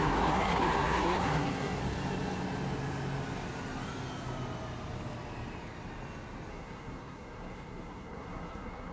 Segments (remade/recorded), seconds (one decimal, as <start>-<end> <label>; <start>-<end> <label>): 0.0-1.8 remade; 1.8-6.5 recorded; 6.5-8.9 remade